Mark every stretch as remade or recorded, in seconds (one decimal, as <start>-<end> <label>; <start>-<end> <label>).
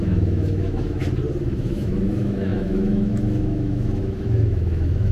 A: 0.0-1.0 remade; 1.0-1.6 recorded; 1.6-5.1 remade